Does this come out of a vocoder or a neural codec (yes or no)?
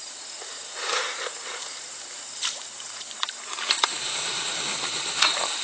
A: yes